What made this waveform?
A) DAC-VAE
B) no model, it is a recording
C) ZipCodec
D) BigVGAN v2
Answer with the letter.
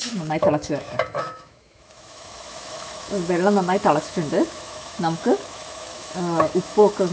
A